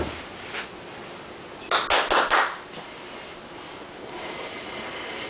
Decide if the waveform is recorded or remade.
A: recorded